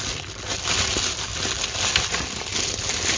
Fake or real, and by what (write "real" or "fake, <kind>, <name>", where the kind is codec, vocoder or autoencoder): real